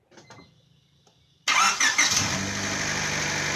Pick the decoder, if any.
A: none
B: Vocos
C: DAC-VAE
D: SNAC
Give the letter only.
A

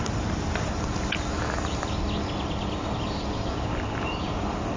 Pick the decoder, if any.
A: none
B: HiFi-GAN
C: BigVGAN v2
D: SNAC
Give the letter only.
A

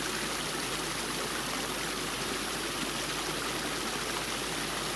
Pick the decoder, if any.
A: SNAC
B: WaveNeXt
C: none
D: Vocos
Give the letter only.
C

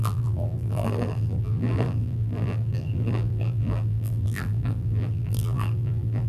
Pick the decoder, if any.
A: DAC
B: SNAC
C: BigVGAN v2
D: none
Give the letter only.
C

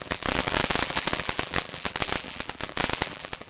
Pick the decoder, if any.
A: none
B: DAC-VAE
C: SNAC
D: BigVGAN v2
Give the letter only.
D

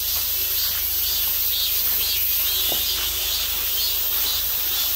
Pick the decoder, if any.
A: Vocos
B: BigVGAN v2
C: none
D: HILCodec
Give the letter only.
C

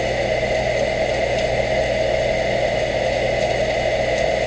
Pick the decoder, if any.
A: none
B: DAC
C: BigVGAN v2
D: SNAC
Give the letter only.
A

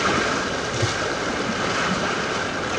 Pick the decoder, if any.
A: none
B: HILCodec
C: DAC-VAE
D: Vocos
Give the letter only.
A